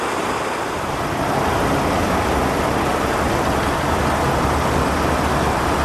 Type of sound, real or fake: real